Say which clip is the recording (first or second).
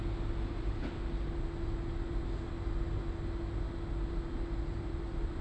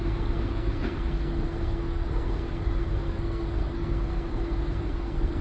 first